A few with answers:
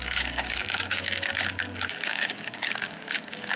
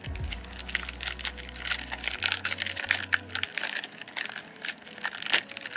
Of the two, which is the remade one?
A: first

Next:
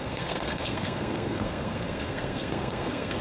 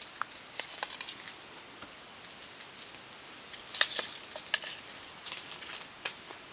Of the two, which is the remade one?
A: first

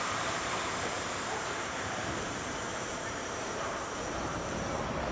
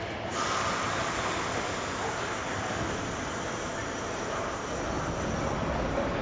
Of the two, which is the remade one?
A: first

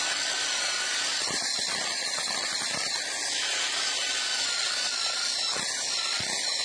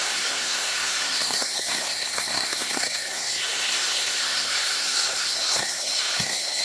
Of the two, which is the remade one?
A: second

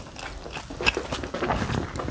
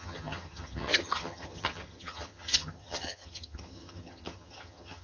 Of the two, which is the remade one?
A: second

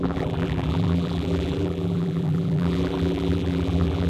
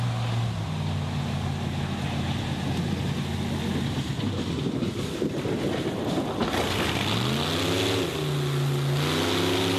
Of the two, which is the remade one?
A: first